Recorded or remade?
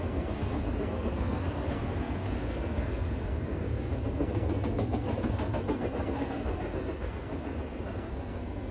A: remade